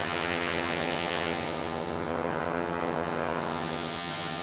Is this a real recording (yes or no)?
no